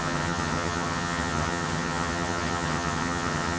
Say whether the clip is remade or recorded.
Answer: remade